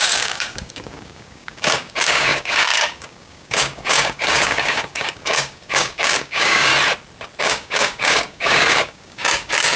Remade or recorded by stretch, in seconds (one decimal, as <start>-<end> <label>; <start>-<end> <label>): 0.0-6.7 remade; 6.7-7.4 recorded; 7.4-9.8 remade